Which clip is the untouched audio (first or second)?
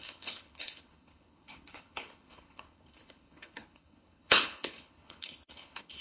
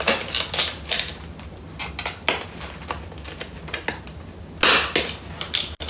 second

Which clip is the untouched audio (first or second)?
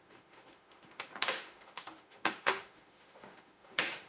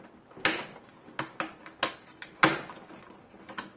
second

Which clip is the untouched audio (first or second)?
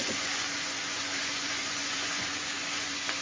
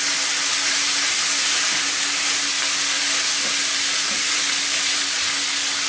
second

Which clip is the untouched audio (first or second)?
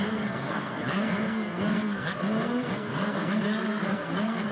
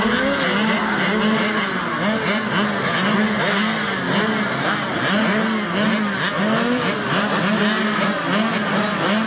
second